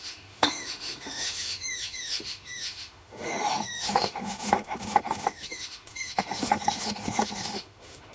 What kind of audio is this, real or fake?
fake